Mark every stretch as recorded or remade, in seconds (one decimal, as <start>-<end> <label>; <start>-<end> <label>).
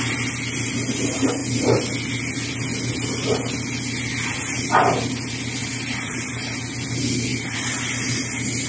0.0-5.6 recorded; 5.6-6.6 remade; 6.6-7.3 recorded; 7.3-8.0 remade; 8.0-8.7 recorded